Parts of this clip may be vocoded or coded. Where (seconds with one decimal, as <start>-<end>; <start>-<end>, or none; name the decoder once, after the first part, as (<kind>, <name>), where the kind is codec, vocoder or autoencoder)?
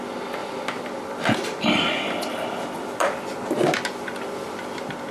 none